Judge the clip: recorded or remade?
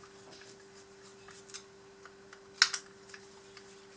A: recorded